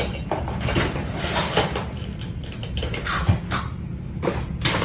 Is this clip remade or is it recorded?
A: remade